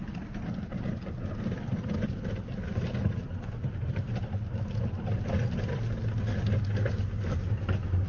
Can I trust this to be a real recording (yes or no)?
yes